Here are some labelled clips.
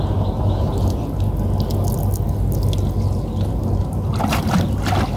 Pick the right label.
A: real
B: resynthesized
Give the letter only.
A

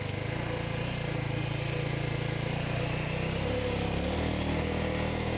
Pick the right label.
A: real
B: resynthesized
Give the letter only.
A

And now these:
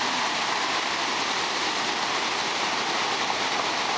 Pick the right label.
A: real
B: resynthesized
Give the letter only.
A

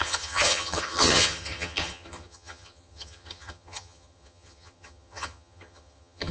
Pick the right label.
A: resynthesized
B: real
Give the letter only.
A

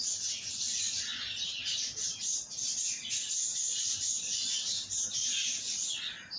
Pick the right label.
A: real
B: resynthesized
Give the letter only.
A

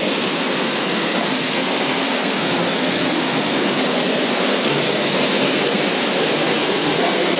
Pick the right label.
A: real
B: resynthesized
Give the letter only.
B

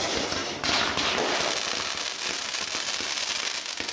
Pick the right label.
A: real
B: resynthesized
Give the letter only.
A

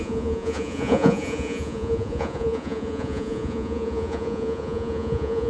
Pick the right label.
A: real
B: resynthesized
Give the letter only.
B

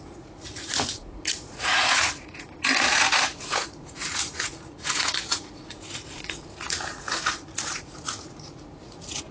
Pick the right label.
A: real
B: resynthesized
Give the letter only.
B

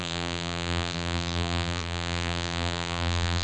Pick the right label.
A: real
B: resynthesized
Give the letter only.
B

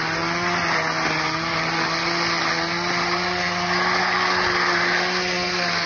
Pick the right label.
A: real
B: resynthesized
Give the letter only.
A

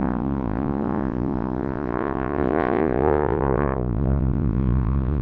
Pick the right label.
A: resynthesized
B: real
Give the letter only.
A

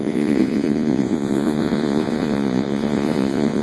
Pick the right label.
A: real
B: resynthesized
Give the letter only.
B